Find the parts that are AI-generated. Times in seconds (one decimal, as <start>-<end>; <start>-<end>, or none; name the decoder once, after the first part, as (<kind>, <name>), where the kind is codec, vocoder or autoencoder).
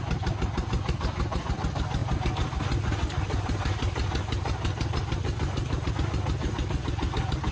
none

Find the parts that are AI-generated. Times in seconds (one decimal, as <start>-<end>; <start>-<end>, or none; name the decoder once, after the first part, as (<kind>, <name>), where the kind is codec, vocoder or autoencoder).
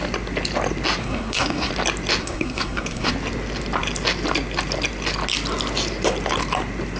1.0-1.7 (codec, SNAC); 2.2-3.1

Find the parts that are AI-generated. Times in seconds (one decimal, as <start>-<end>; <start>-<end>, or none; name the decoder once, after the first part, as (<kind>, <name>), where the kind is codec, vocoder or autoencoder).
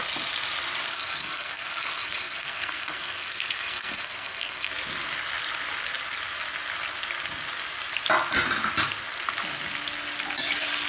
0.9-4.7 (codec, SNAC)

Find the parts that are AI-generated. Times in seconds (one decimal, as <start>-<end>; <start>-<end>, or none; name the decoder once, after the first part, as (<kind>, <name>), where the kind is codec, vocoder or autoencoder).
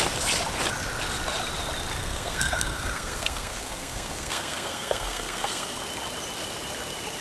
2.0-5.8 (codec, SNAC)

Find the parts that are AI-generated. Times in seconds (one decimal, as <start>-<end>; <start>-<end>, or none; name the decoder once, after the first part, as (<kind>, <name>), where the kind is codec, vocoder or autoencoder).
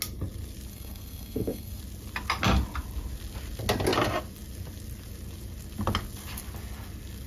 0.7-1.8 (codec, SNAC)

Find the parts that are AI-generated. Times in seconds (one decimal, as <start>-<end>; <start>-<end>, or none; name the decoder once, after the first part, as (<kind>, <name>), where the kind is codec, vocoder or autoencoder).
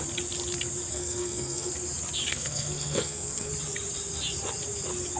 0.9-1.7 (codec, SNAC); 2.3-3.5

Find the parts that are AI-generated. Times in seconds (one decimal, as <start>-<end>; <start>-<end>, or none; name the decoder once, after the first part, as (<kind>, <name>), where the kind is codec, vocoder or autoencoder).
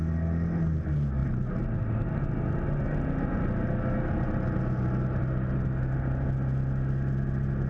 none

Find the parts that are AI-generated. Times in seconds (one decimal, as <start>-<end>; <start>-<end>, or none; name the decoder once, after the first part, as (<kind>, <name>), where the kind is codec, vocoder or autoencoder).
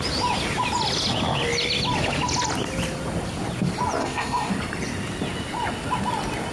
4.0-4.5 (codec, SNAC)